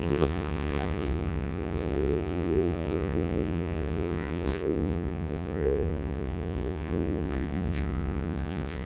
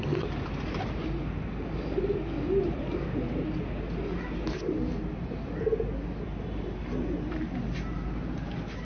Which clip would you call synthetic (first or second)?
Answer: first